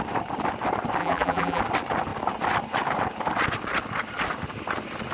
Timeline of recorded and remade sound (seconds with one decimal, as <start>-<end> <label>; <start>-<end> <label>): 0.0-1.0 recorded; 1.0-1.6 remade; 1.6-5.1 recorded